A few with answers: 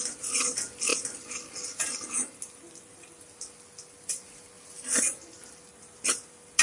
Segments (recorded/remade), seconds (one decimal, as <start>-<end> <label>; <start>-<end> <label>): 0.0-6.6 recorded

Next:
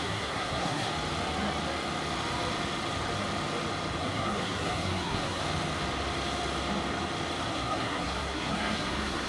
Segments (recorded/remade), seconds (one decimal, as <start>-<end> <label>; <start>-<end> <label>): 0.0-0.9 remade; 0.9-4.0 recorded; 4.0-5.4 remade; 5.4-7.5 recorded; 7.5-9.3 remade

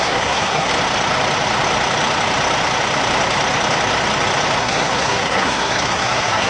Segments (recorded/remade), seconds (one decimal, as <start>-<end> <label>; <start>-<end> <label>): 0.0-0.7 remade; 0.7-4.6 recorded; 4.6-6.5 remade